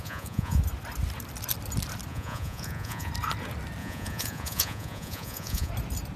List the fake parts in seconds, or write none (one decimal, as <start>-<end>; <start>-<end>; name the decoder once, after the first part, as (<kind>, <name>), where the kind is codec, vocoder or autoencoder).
0.0-0.6 (vocoder, Vocos); 2.1-3.1; 3.8-5.7